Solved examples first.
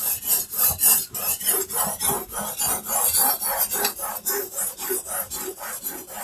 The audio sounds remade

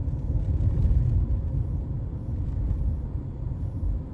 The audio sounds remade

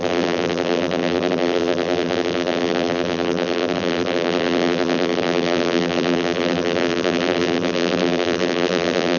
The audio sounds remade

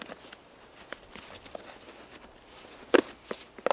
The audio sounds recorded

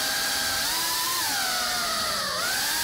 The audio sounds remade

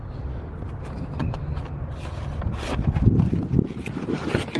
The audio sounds recorded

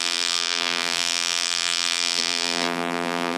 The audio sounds remade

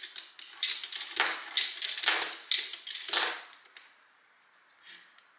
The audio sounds recorded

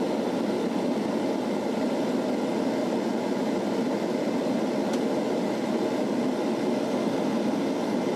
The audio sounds recorded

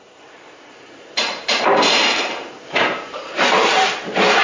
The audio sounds remade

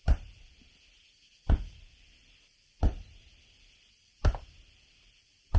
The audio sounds remade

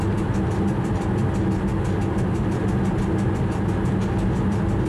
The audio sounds recorded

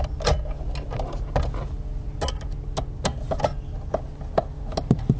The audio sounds recorded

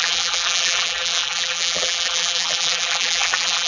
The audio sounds remade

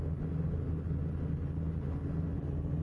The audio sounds recorded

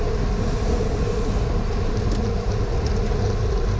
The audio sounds recorded